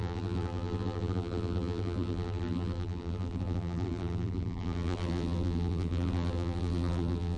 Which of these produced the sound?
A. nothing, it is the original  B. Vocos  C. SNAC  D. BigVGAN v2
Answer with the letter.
D